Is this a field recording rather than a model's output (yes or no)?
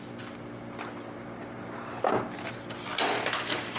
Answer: yes